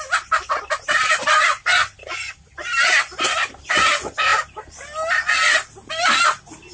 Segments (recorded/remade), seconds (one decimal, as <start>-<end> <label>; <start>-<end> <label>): 0.0-6.7 recorded